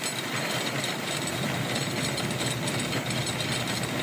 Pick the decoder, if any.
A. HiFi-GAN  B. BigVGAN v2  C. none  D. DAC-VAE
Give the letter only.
C